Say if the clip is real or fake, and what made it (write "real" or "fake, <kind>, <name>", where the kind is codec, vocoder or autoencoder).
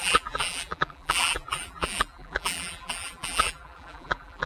fake, vocoder, BigVGAN v2